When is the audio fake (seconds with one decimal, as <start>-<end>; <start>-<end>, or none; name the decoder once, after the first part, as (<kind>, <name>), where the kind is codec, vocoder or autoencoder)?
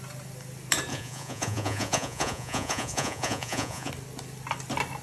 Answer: 0.9-3.9 (vocoder, Vocos)